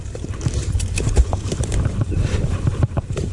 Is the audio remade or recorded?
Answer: remade